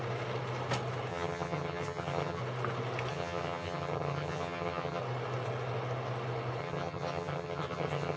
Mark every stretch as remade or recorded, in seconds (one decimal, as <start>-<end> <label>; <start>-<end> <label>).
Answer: 0.0-1.1 recorded; 1.1-2.4 remade; 2.4-3.1 recorded; 3.1-5.0 remade; 5.0-6.6 recorded; 6.6-8.2 remade